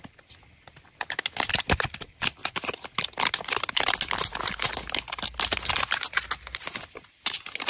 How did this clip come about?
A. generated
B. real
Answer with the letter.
B